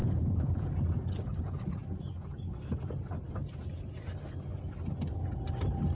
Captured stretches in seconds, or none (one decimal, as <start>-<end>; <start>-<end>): 0.7-5.9